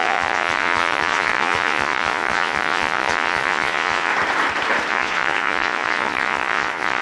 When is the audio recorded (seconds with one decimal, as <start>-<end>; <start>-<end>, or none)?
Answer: 4.1-4.9

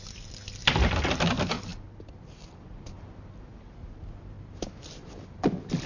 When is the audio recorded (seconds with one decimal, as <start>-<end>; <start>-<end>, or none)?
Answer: 0.0-5.9

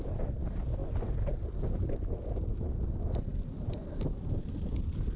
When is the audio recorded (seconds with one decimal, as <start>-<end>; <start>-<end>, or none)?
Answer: 0.0-5.2